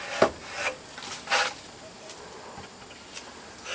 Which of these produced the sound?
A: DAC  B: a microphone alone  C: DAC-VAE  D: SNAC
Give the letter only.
B